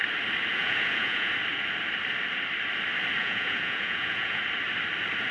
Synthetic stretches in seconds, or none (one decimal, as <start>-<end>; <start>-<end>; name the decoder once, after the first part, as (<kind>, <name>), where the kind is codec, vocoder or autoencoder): 0.5-1.3 (vocoder, Vocos); 3.2-4.4

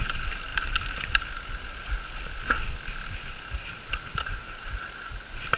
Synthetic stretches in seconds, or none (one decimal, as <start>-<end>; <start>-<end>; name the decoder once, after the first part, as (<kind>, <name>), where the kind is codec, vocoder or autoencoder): none

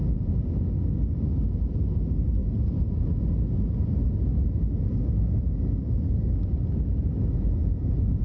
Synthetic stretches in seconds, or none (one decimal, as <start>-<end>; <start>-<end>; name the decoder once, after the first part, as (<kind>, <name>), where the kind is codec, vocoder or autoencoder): 0.0-0.7 (vocoder, Vocos); 2.4-2.9; 7.6-8.2

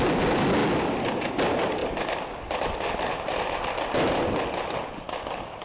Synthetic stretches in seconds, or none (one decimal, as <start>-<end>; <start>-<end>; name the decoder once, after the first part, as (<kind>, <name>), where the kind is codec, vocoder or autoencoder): none

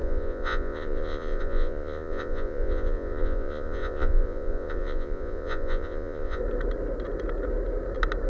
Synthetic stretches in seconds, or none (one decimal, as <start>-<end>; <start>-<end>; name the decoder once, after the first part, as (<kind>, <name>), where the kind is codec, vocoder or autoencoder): 0.0-6.4 (vocoder, Vocos)